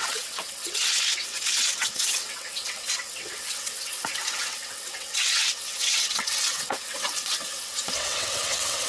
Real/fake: fake